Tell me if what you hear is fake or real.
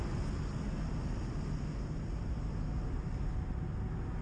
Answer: real